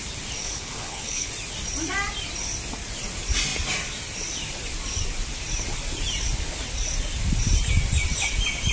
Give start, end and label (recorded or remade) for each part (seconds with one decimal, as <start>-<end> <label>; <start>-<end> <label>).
0.0-0.4 recorded; 0.4-1.3 remade; 1.3-8.7 recorded